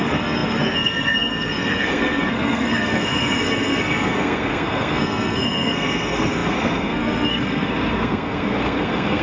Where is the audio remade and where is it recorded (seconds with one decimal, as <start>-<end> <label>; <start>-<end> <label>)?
0.0-9.2 remade

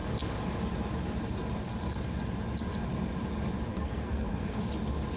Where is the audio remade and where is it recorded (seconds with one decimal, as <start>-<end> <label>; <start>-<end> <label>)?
0.0-3.7 recorded; 3.7-4.6 remade; 4.6-5.2 recorded

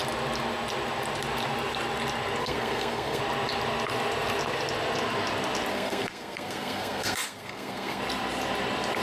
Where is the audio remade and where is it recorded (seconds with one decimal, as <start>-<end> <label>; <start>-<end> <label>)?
0.0-2.4 recorded; 2.4-3.2 remade; 3.2-5.7 recorded; 5.7-8.0 remade; 8.0-9.0 recorded

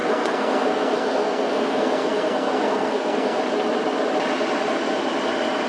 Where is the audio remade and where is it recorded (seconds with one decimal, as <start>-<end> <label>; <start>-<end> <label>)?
0.0-3.4 remade; 3.4-5.7 recorded

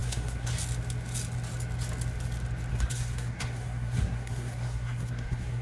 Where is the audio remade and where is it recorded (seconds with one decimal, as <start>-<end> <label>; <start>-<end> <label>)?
0.0-0.5 remade; 0.5-2.7 recorded; 2.7-5.6 remade

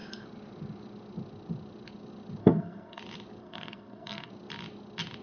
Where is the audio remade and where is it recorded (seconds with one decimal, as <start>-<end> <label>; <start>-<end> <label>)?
0.0-2.4 recorded; 2.4-3.0 remade; 3.0-3.4 recorded; 3.4-4.3 remade; 4.3-5.2 recorded

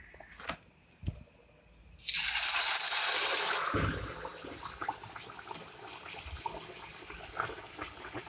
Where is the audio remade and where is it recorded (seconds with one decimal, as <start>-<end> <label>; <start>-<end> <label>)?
0.0-8.3 recorded

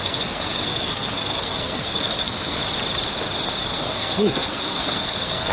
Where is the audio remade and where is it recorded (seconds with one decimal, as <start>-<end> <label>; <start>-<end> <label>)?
0.0-2.6 remade; 2.6-3.6 recorded; 3.6-5.5 remade